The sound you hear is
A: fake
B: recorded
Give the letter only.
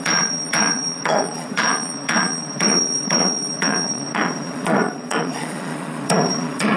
A